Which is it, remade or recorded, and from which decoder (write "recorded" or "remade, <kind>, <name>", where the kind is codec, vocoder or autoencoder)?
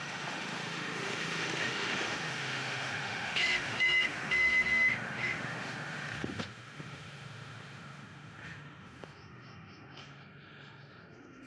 remade, autoencoder, DAC-VAE